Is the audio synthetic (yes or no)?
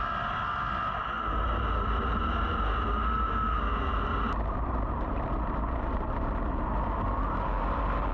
no